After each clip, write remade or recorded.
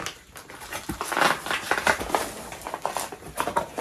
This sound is remade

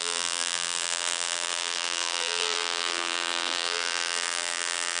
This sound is remade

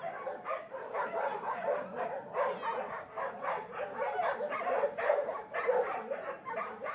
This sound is recorded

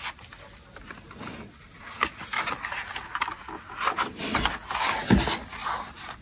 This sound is recorded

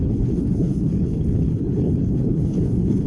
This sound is remade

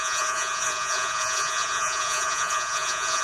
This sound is remade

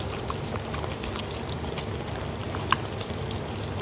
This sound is recorded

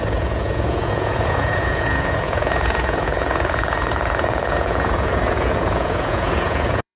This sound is remade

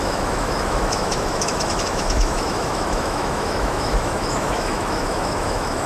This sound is remade